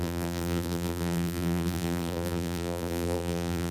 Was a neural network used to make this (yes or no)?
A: yes